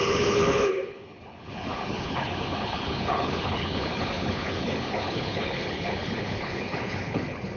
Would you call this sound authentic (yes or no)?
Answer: no